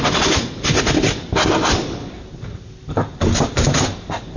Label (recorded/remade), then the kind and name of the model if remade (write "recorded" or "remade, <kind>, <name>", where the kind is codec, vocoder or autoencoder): recorded